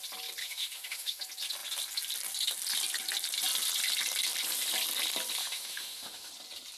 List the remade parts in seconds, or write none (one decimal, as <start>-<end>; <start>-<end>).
0.4-1.2; 5.4-6.3